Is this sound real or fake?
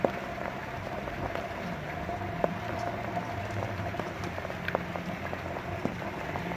real